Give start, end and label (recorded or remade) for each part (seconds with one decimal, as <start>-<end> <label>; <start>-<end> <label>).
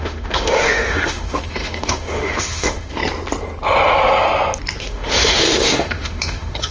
0.0-3.0 remade; 3.0-4.8 recorded; 4.8-6.7 remade